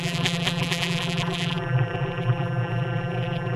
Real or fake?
fake